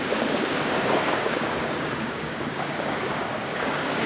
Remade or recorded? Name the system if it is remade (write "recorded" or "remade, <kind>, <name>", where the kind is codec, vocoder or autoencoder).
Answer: remade, codec, DAC